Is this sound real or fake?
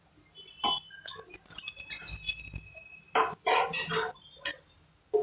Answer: real